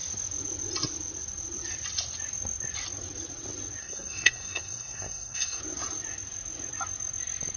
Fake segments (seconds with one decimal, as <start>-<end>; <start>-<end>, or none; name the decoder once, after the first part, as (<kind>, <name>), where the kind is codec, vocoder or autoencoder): 3.8-5.6 (codec, SNAC)